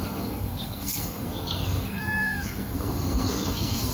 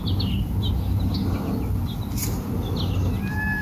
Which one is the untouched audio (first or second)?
second